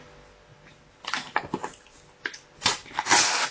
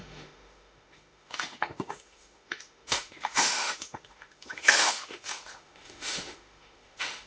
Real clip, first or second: first